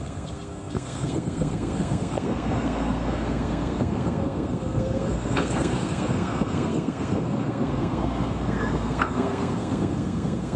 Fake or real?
fake